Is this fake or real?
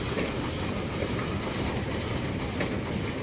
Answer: real